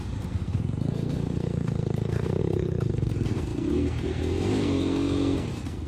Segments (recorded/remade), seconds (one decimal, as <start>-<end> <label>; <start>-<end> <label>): 0.0-5.9 remade